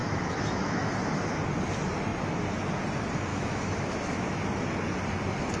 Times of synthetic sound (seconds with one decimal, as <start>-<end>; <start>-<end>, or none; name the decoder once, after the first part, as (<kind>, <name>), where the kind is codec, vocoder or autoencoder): 0.0-0.9 (autoencoder, DAC-VAE); 3.3-4.4